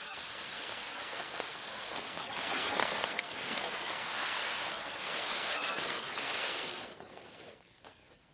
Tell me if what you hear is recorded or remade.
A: remade